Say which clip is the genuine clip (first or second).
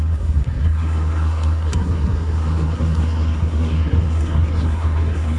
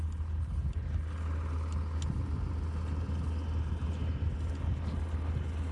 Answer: second